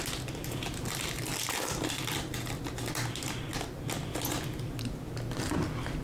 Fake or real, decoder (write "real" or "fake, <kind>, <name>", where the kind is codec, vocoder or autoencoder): real